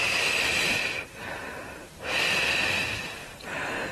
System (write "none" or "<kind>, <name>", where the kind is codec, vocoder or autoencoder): vocoder, BigVGAN v2